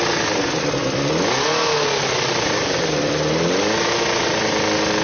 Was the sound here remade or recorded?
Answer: recorded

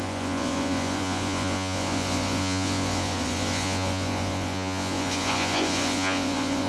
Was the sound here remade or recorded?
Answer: remade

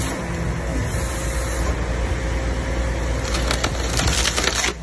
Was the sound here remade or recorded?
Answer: recorded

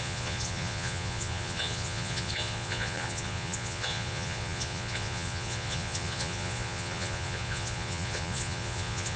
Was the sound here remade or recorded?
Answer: remade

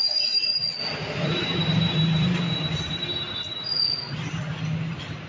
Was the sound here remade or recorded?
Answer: recorded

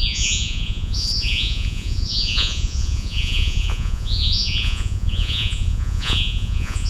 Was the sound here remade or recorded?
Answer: remade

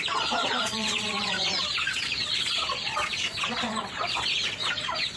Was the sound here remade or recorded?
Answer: remade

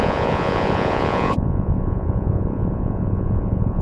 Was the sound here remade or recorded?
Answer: remade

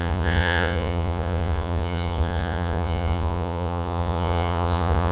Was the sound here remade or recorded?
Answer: remade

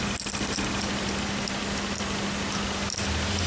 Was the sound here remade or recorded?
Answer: recorded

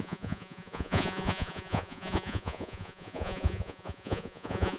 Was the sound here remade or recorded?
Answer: remade